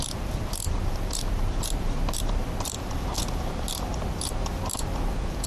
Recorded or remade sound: remade